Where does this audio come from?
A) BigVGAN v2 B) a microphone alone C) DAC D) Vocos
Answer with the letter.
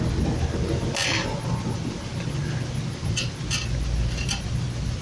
B